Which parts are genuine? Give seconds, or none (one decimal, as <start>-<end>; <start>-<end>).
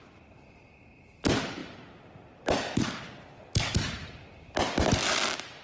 0.0-5.6